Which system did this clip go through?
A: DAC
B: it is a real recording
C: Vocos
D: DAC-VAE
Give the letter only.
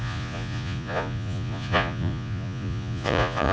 C